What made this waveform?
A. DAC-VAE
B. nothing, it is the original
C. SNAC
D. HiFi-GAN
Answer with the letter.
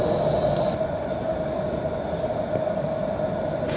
B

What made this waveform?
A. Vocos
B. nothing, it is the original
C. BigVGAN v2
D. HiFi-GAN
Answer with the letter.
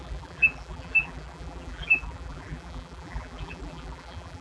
C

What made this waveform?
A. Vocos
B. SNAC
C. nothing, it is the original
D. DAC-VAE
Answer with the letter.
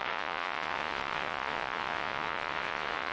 A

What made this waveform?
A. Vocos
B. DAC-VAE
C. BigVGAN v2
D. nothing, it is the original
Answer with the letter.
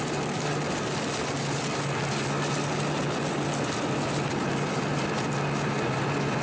D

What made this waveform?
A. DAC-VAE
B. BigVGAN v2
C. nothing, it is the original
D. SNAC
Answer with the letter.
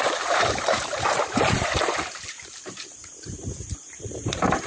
B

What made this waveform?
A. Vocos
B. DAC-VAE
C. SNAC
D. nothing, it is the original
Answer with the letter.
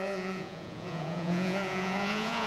A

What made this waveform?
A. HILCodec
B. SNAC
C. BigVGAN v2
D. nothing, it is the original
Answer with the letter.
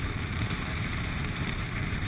C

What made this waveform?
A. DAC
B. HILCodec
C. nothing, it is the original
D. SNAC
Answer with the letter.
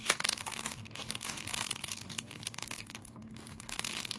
A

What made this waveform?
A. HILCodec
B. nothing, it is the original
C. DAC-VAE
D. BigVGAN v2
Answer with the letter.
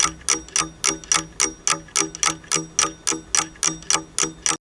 B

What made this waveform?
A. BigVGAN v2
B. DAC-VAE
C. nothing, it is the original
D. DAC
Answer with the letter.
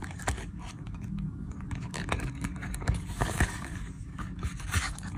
D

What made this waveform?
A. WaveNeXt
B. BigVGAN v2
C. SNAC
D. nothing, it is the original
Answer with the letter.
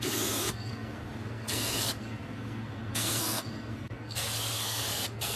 C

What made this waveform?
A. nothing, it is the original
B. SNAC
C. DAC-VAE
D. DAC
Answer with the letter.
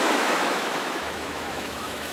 C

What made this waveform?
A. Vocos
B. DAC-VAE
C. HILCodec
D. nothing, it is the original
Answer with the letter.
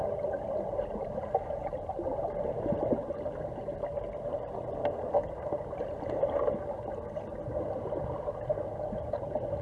D